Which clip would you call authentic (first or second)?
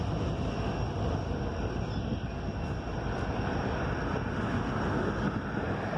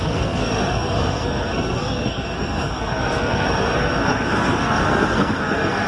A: first